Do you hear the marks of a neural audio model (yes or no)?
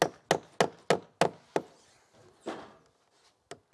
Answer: no